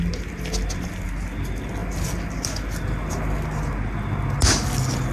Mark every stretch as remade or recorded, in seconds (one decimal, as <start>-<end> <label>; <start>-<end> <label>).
0.0-5.1 recorded